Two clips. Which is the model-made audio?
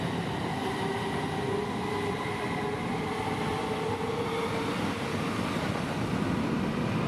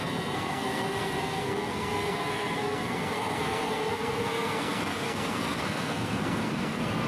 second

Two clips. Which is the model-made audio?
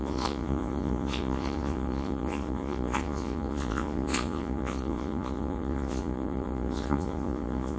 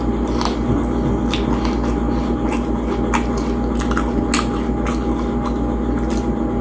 first